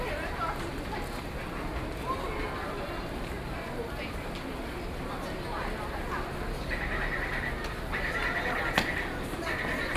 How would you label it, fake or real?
real